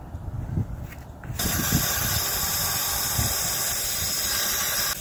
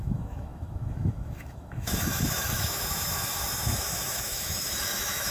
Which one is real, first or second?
first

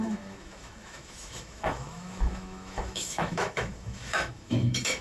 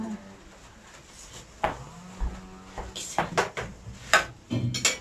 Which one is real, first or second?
second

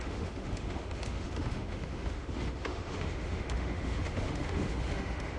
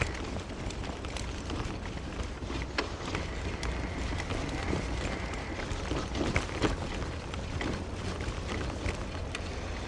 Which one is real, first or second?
second